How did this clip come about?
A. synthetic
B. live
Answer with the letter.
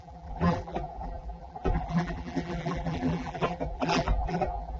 A